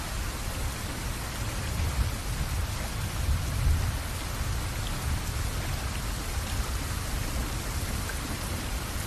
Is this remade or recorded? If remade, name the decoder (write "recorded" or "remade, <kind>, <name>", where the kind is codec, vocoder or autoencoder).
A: recorded